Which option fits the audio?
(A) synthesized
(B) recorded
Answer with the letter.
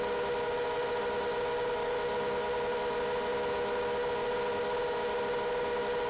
B